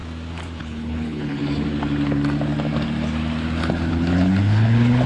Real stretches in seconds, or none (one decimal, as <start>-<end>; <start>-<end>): 0.0-0.6; 1.4-3.9